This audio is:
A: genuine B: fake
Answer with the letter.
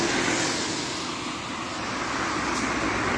A